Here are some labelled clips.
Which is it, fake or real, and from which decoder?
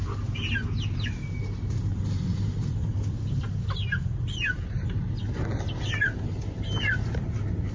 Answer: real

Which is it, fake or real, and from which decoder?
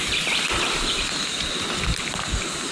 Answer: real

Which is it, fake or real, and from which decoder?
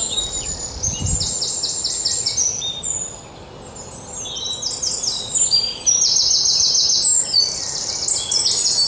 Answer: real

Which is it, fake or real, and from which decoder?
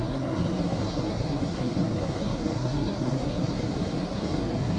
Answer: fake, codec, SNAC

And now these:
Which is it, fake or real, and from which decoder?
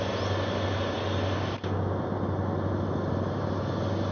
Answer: real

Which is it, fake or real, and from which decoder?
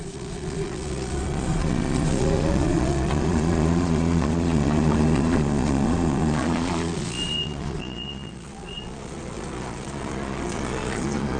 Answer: fake, vocoder, Vocos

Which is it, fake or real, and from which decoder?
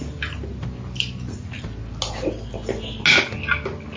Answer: real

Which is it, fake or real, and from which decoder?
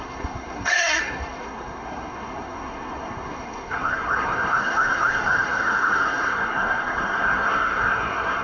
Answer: fake, codec, SNAC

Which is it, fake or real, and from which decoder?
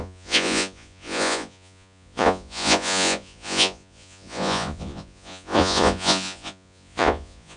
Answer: fake, vocoder, Vocos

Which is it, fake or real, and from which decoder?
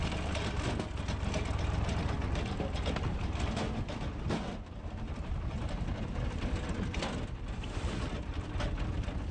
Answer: real